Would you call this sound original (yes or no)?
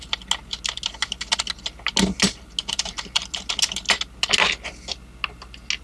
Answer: yes